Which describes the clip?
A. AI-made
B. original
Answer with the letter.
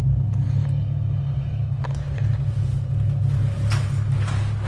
B